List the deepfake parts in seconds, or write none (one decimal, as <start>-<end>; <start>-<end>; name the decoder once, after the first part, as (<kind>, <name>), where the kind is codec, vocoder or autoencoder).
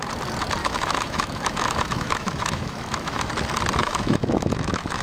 0.6-3.3 (autoencoder, DAC-VAE); 3.8-5.0